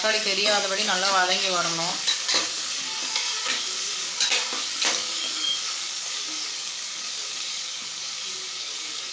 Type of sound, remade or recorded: remade